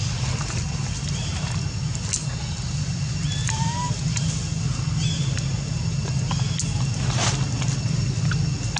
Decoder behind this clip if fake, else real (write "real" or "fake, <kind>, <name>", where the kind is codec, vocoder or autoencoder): real